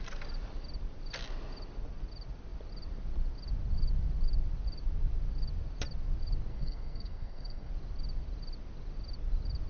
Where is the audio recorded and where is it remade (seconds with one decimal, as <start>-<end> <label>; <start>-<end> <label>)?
0.0-6.5 recorded; 6.5-7.7 remade; 7.7-9.7 recorded